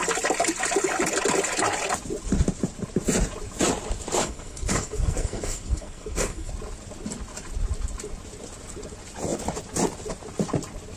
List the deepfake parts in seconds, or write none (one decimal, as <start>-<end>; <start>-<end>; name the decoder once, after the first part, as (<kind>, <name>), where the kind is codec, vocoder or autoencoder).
4.2-6.5 (codec, SNAC)